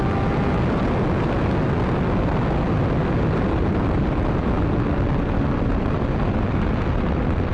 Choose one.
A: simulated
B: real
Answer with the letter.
B